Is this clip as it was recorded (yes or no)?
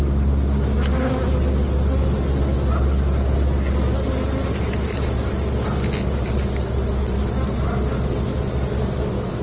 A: yes